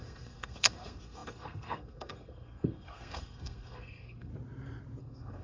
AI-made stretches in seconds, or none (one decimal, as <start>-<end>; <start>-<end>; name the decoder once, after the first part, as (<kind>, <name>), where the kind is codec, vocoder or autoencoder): 0.0-4.3 (codec, SNAC); 5.0-5.4